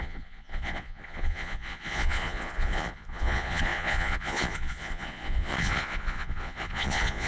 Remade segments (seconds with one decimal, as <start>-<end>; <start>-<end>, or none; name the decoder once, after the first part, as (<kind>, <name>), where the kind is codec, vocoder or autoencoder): 0.0-7.3 (vocoder, Vocos)